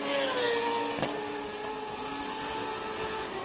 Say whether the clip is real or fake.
real